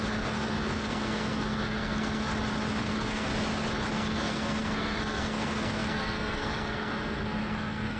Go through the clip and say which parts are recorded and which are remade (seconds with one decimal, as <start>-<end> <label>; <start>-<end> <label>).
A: 0.0-2.3 remade; 2.3-2.8 recorded; 2.8-3.3 remade; 3.3-3.9 recorded; 3.9-8.0 remade